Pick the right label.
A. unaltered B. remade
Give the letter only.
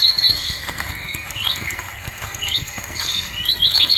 B